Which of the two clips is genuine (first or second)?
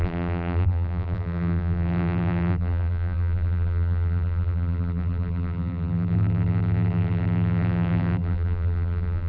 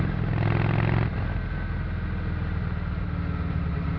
second